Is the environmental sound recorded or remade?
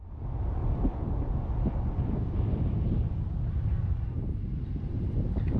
recorded